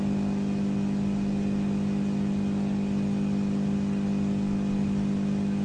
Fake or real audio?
real